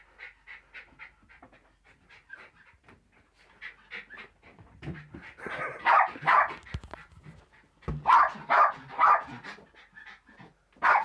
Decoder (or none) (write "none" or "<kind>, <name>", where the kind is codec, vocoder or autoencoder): none